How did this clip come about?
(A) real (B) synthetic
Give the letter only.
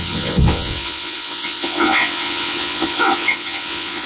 B